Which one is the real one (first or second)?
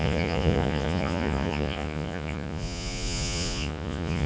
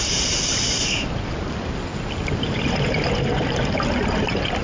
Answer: second